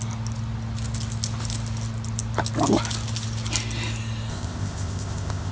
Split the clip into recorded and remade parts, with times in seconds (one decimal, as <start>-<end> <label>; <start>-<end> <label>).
0.0-4.3 recorded; 4.3-5.5 remade